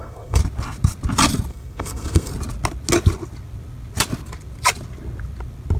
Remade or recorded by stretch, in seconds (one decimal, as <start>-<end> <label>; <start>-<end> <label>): 0.0-0.4 remade; 0.4-1.5 recorded; 1.5-2.3 remade; 2.3-5.8 recorded